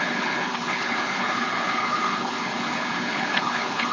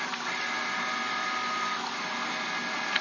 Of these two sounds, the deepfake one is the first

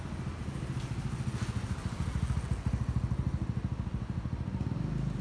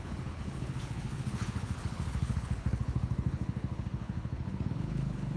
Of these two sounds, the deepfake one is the second